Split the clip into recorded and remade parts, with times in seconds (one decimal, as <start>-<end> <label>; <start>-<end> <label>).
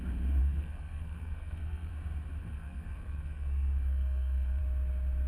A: 0.0-0.4 recorded; 0.4-1.9 remade; 1.9-2.4 recorded; 2.4-4.6 remade; 4.6-5.3 recorded